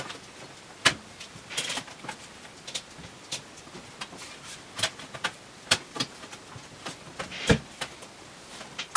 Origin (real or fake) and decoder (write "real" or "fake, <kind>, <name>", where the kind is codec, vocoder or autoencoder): real